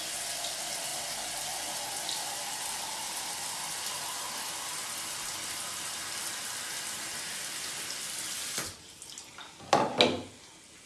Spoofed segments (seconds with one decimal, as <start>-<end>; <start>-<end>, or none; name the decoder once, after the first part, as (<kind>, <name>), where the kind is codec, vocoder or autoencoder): none